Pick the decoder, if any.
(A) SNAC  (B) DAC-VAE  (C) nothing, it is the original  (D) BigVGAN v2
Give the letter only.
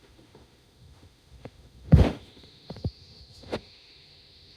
B